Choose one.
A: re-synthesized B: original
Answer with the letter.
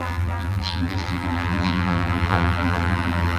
A